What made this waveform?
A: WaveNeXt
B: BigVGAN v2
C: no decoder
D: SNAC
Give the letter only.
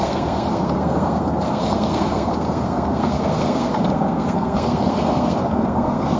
D